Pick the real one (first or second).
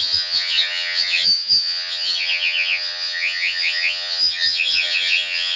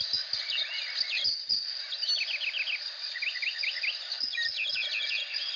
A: second